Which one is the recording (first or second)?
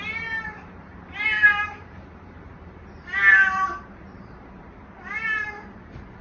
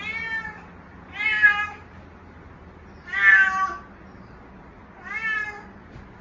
second